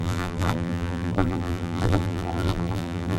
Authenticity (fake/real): fake